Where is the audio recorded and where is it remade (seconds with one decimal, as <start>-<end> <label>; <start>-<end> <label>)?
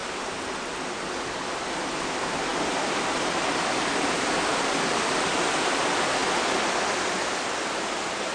0.0-8.3 recorded